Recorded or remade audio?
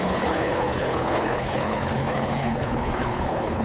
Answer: remade